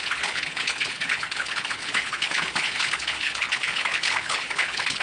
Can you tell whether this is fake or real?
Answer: fake